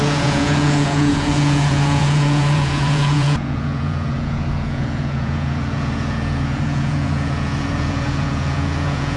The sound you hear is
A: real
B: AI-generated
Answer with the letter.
B